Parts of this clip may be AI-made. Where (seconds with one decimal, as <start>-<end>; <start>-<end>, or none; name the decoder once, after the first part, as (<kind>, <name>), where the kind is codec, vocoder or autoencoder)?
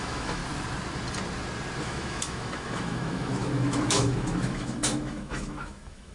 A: 0.0-0.4 (autoencoder, DAC-VAE); 1.8-6.1